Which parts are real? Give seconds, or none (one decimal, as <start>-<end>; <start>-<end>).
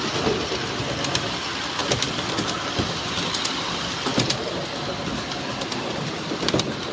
0.0-1.8; 2.3-4.1; 4.8-6.9